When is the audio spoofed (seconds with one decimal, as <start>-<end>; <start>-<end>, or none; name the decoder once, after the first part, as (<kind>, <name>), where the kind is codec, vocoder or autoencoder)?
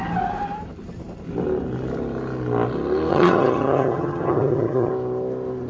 3.1-4.9 (vocoder, HiFi-GAN)